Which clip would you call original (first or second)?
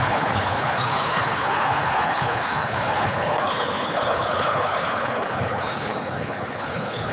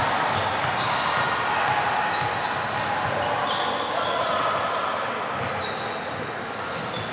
second